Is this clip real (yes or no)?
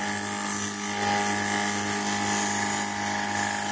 yes